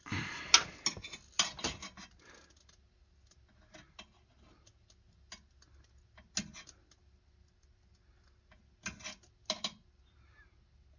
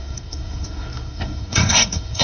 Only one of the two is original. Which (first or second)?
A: first